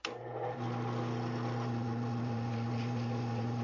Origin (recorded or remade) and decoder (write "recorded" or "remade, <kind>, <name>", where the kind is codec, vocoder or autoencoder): recorded